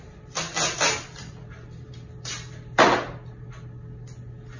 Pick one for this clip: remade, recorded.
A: recorded